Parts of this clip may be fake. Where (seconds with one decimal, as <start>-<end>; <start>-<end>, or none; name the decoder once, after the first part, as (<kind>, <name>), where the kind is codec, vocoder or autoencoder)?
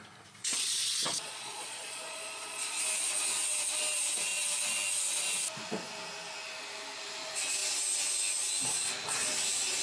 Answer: 0.4-2.8 (vocoder, Vocos)